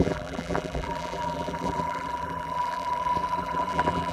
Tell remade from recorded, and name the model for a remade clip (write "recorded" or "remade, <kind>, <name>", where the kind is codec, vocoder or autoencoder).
remade, vocoder, BigVGAN v2